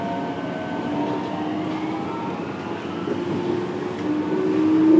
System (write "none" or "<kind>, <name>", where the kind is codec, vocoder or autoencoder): none